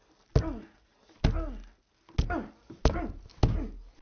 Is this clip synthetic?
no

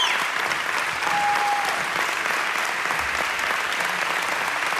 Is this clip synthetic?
no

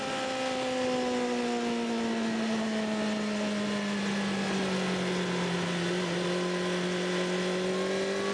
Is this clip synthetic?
no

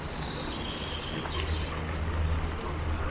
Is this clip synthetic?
no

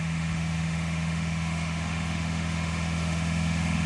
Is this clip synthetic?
yes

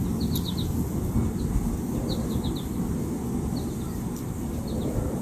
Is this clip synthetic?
no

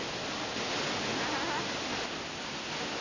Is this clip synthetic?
no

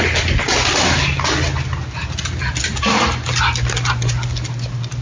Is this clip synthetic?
no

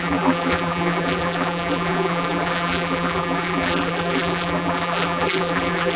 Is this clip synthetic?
yes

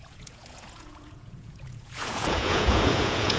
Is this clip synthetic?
yes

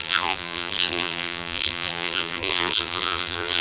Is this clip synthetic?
yes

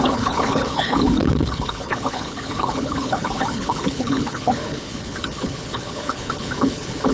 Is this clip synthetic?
yes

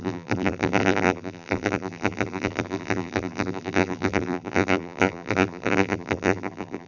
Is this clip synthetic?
yes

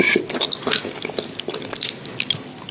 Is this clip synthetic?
no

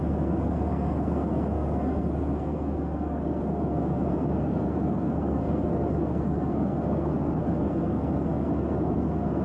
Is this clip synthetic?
yes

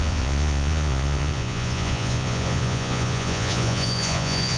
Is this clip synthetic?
yes